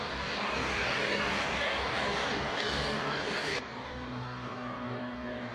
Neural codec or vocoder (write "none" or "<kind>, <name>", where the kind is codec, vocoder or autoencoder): codec, DAC